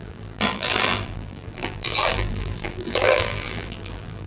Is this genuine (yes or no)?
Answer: no